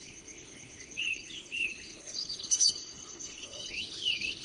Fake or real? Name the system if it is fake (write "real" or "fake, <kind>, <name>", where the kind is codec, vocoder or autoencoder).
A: fake, codec, HILCodec